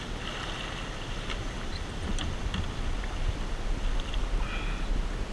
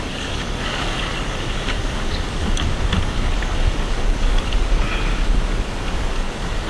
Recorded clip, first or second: first